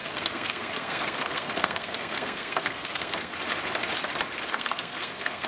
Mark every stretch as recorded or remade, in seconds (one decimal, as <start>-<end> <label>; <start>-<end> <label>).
0.0-3.3 remade; 3.3-4.5 recorded; 4.5-5.5 remade